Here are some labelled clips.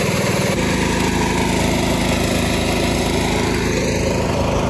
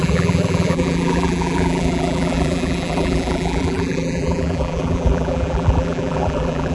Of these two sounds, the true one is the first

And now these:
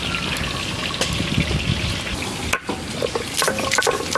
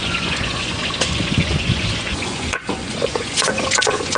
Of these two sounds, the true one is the first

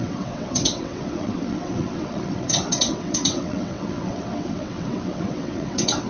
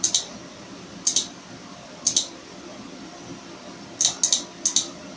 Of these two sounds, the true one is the second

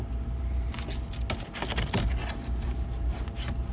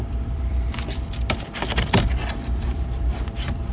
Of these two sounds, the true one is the first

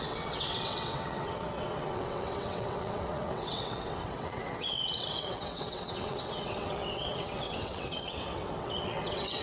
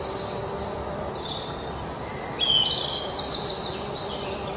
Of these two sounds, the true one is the second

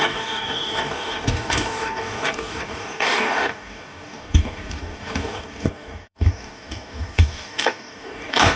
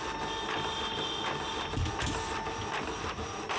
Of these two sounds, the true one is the second